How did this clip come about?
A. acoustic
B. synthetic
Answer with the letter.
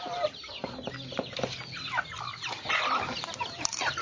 A